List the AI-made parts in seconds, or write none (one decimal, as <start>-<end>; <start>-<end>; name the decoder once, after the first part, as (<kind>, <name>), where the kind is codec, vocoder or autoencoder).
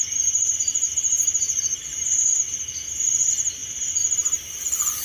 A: 1.1-1.8 (vocoder, BigVGAN v2)